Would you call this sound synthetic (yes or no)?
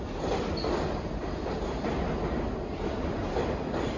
no